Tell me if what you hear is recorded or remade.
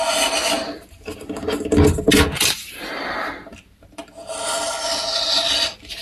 recorded